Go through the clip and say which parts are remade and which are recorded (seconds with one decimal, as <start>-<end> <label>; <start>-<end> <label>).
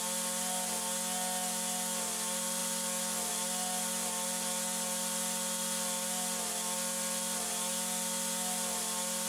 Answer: 0.0-9.3 recorded